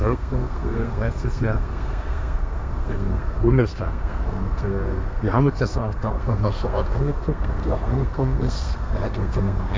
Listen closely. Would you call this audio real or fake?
fake